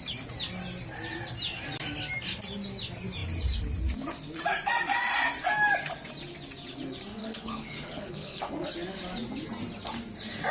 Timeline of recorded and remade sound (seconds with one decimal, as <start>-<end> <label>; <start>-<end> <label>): 0.0-7.2 recorded; 7.2-8.5 remade; 8.5-10.5 recorded